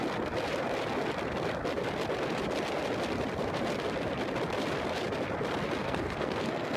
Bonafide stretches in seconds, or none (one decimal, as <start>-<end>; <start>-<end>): 0.0-5.8